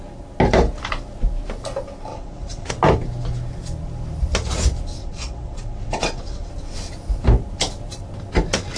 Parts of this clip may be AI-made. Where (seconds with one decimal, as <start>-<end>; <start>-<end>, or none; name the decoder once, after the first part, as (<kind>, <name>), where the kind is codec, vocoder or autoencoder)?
2.1-2.7 (vocoder, WaveNeXt); 5.0-6.5